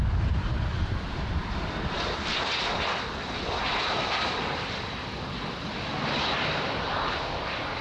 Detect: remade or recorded recorded